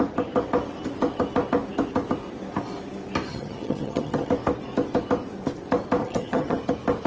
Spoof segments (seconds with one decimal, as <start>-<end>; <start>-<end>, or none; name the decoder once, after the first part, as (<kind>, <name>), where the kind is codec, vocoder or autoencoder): 3.3-4.3 (vocoder, HiFi-GAN); 6.0-6.6

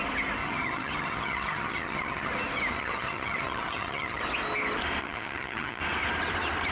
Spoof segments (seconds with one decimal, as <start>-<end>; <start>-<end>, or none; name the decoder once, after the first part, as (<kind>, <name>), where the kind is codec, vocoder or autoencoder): 0.4-2.3 (vocoder, HiFi-GAN); 2.7-4.2; 5.0-5.8

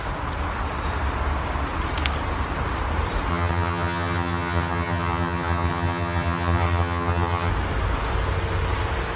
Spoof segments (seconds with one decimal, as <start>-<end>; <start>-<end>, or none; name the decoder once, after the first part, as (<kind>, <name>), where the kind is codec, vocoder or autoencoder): 3.3-7.5 (vocoder, HiFi-GAN)

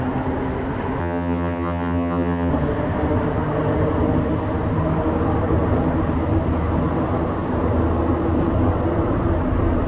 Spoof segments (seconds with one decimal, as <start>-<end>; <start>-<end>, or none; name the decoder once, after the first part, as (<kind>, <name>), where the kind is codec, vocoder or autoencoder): 1.0-2.5 (vocoder, HiFi-GAN)